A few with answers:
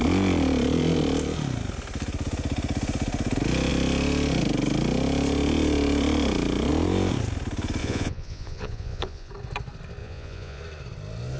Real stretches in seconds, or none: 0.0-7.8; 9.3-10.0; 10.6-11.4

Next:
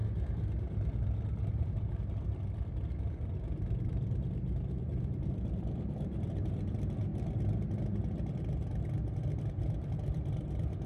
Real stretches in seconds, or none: 0.0-1.6; 2.3-3.9; 7.1-9.5

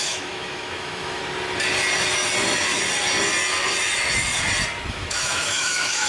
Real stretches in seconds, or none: 1.2-4.9

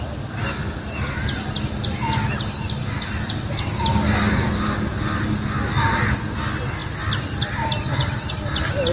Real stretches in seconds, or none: 0.0-8.9

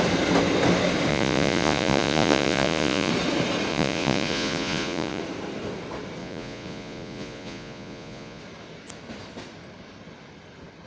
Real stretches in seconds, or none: 0.0-1.1; 3.1-3.7; 5.2-6.2; 8.4-10.9

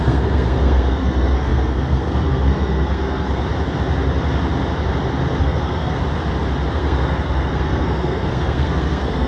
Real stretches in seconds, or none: 3.4-5.4; 6.0-6.7

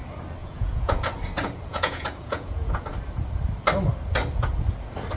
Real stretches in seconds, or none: 0.0-0.4; 1.0-1.7; 2.9-5.2